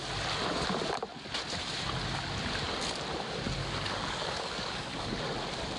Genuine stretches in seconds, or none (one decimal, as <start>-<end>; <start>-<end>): 0.0-3.6; 5.2-5.8